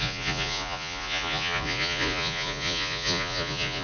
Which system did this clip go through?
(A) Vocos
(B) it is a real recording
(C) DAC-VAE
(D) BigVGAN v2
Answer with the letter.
A